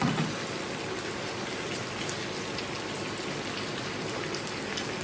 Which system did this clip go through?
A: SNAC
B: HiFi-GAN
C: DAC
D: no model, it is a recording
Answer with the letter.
D